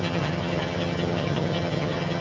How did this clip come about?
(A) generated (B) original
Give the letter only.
A